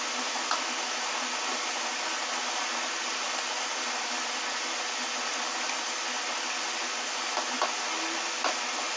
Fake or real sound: real